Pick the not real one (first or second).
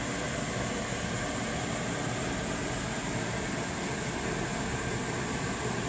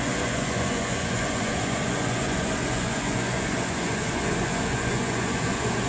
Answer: second